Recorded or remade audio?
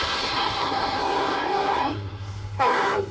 remade